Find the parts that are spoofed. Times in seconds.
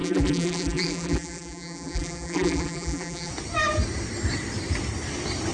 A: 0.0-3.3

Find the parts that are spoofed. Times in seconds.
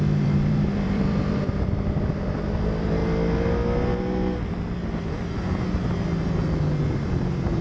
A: 0.0-3.0; 6.9-7.6